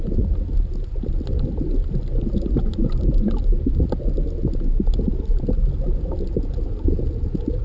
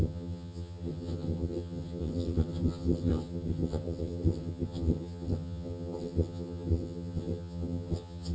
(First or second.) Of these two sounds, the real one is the first